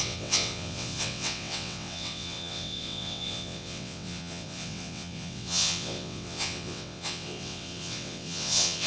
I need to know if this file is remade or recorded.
remade